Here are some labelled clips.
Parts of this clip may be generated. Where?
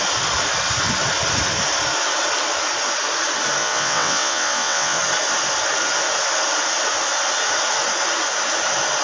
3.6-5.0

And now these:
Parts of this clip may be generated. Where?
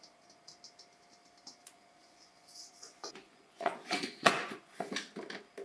1.6-4.9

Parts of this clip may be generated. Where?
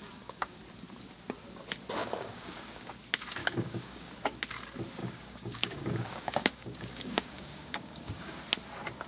0.0-0.6; 2.0-2.9; 3.4-4.1; 5.0-8.4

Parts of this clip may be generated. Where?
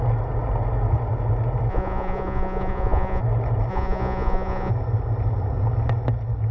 1.7-3.2; 3.7-4.7